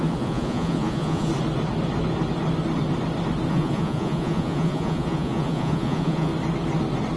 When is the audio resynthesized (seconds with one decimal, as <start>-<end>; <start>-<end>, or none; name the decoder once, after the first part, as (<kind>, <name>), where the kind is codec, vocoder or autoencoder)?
0.0-1.3 (vocoder, Vocos); 3.5-6.3